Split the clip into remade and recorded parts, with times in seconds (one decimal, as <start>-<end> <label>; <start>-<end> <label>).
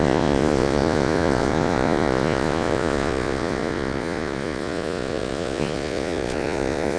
0.0-7.0 remade